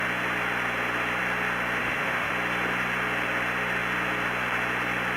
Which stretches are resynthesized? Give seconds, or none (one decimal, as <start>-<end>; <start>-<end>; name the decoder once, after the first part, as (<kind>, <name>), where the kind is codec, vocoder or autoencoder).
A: 1.8-2.3 (autoencoder, DAC-VAE)